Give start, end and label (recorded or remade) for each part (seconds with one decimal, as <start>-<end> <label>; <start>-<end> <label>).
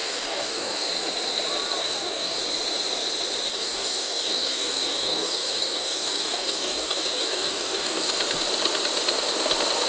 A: 0.0-0.9 remade; 0.9-1.8 recorded; 1.8-2.4 remade; 2.4-3.5 recorded; 3.5-8.1 remade; 8.1-9.9 recorded